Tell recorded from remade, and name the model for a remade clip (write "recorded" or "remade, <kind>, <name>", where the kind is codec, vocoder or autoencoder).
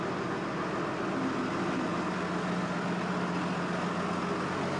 recorded